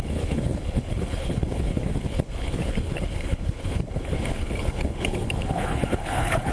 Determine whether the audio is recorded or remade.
remade